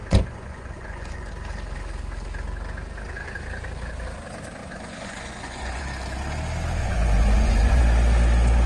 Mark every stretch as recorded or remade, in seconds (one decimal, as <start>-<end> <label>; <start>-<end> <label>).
0.0-1.3 remade; 1.3-4.6 recorded; 4.6-5.8 remade; 5.8-6.8 recorded; 6.8-7.8 remade; 7.8-8.7 recorded